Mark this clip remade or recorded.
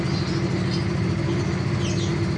recorded